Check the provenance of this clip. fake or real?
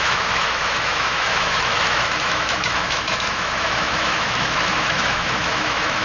fake